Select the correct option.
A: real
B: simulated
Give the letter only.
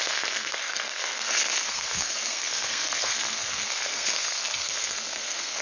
B